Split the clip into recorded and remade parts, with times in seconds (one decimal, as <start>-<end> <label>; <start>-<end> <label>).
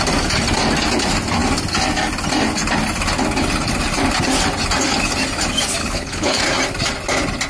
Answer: 0.0-5.8 recorded; 5.8-6.4 remade; 6.4-7.5 recorded